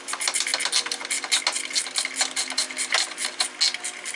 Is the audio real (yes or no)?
yes